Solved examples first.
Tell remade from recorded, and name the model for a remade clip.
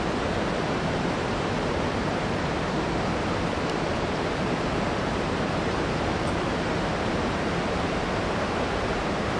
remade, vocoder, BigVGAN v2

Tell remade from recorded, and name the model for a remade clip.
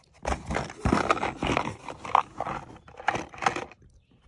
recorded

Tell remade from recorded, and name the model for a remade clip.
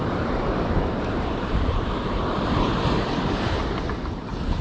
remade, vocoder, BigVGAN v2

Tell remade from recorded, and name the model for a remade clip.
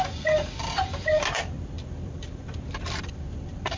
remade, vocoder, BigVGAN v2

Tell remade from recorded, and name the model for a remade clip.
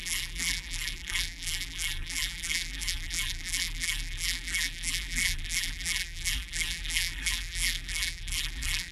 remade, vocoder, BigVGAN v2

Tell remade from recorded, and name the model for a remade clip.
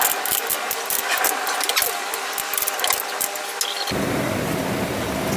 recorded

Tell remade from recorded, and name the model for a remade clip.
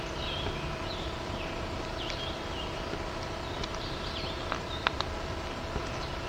recorded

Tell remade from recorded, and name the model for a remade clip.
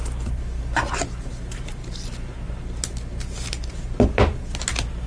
recorded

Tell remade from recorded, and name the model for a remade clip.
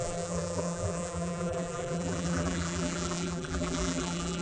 remade, vocoder, BigVGAN v2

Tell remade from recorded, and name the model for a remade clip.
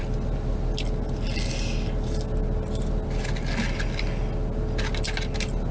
recorded